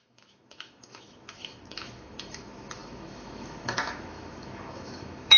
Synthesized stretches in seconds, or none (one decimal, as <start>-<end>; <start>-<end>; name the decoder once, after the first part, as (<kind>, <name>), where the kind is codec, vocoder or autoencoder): 0.0-5.4 (autoencoder, DAC-VAE)